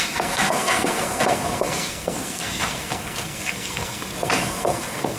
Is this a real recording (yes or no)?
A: no